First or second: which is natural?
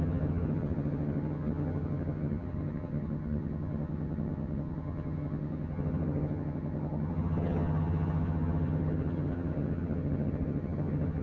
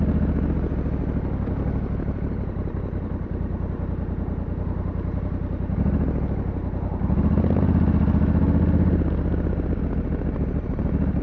second